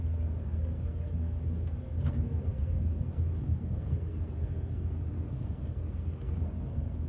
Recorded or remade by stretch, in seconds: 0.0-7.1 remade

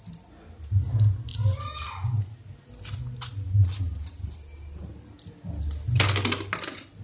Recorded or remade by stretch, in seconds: 0.0-7.0 recorded